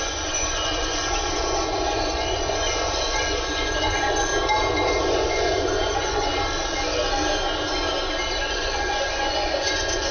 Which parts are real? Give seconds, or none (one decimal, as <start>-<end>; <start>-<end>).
4.3-5.1; 6.3-8.4